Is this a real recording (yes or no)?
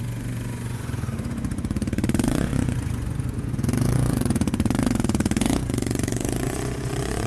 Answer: no